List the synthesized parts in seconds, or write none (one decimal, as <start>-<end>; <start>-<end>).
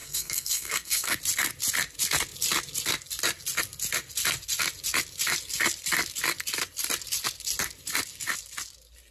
0.0-1.2